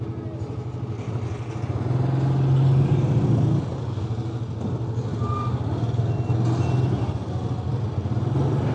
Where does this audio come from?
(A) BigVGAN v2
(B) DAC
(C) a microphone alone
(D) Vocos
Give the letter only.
C